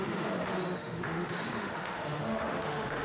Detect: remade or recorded remade